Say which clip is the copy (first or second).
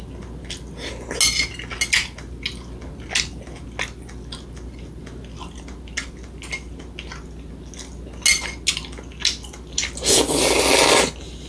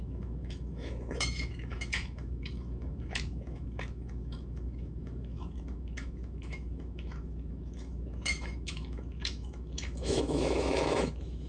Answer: second